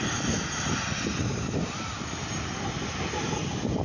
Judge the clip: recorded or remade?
remade